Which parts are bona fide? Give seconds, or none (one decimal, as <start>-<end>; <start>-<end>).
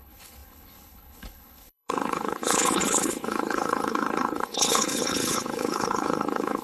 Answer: none